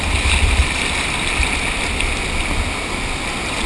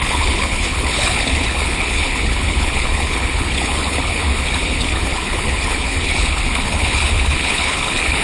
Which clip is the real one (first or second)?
first